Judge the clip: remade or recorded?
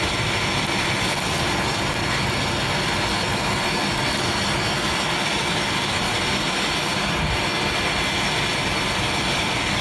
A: recorded